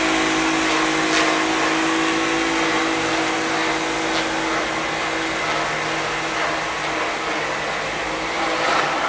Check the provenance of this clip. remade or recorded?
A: recorded